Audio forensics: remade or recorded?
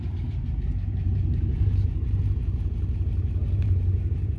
remade